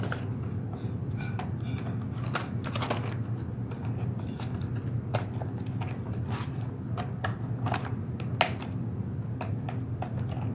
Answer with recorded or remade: recorded